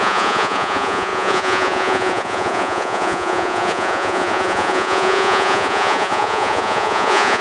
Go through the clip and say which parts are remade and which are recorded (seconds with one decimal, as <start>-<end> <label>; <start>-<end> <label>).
0.0-7.4 remade